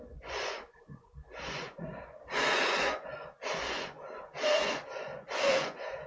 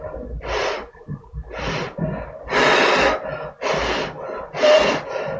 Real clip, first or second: second